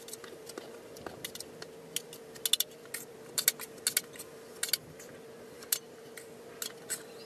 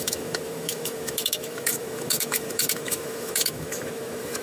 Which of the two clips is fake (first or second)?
second